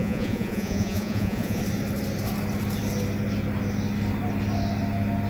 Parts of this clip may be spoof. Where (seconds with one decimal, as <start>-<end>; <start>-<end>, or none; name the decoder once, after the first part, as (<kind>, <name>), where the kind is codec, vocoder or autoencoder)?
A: 0.0-1.6 (vocoder, Vocos)